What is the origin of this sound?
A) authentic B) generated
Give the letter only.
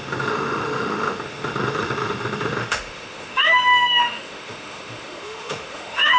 B